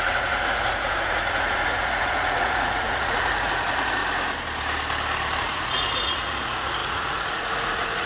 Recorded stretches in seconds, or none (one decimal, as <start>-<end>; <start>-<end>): 4.0-5.4